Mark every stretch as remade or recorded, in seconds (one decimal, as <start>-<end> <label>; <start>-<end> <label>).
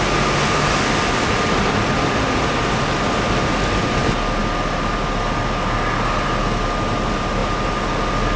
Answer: 0.0-8.4 recorded